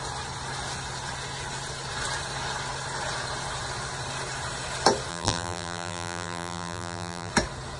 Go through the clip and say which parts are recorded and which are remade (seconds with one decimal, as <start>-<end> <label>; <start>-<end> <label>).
0.0-5.1 recorded; 5.1-7.3 remade; 7.3-7.8 recorded